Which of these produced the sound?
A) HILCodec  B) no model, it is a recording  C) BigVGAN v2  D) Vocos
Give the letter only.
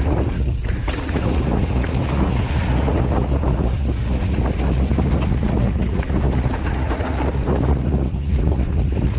D